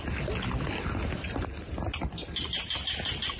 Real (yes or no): yes